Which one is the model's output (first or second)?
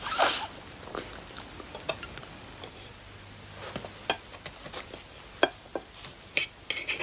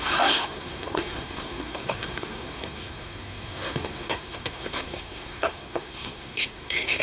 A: second